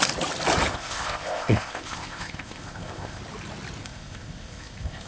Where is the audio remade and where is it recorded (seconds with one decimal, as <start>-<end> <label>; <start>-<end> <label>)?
0.0-0.7 recorded; 0.7-3.2 remade; 3.2-3.8 recorded; 3.8-5.1 remade